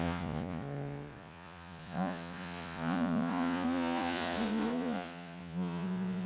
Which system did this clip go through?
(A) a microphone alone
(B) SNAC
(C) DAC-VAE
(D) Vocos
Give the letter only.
D